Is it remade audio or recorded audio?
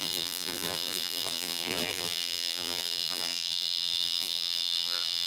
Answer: remade